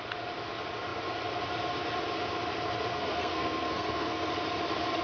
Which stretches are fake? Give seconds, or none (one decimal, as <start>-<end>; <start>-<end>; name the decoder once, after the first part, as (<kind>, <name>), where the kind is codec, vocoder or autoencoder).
2.9-4.3 (codec, SNAC)